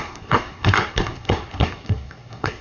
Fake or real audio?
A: fake